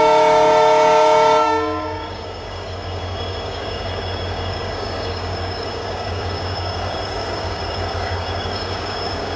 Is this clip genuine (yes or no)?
no